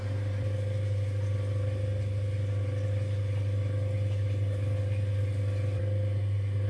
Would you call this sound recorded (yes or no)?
yes